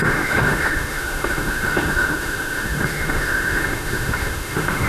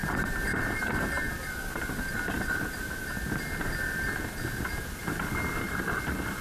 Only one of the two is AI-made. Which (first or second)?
first